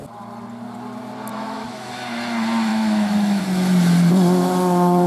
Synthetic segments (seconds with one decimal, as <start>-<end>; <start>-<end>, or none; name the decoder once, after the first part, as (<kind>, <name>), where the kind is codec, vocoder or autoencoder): 1.3-1.9 (autoencoder, DAC-VAE); 2.7-3.4